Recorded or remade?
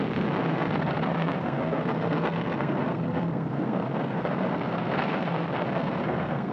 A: remade